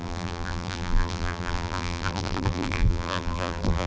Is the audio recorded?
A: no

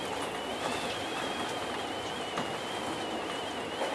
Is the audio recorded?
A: yes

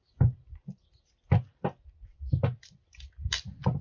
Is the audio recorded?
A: yes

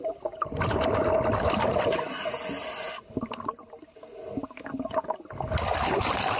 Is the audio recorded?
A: yes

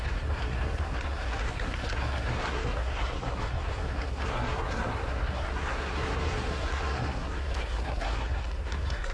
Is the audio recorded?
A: no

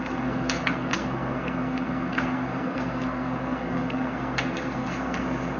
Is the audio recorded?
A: no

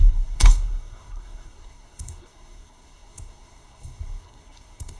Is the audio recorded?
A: no